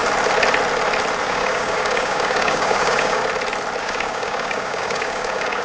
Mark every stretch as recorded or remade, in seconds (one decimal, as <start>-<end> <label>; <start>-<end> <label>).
0.0-1.2 recorded; 1.2-3.2 remade; 3.2-3.8 recorded; 3.8-5.6 remade